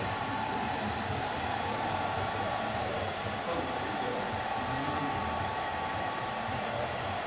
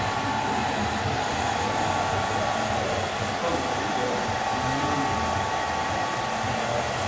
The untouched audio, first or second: second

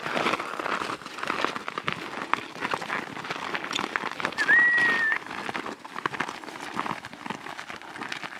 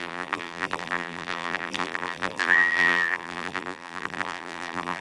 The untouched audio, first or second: first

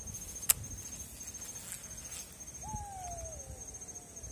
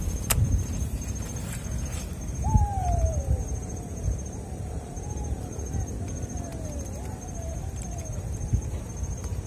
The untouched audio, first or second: first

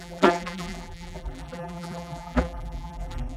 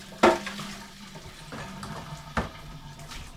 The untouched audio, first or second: second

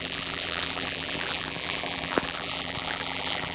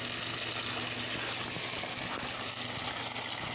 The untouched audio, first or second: second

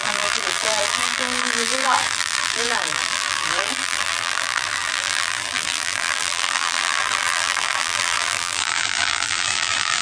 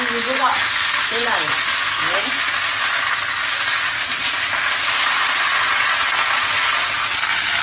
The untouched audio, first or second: second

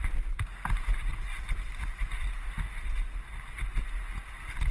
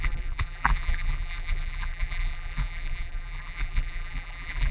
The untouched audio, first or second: first